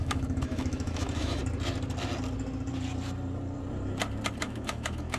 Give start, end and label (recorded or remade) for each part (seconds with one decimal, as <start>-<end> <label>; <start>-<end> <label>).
0.0-1.4 remade; 1.4-4.4 recorded; 4.4-5.2 remade